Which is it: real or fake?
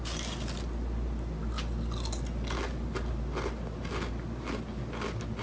real